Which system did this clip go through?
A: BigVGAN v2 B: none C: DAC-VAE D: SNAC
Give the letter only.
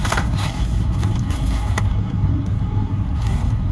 D